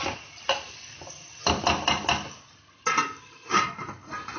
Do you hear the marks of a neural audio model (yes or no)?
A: no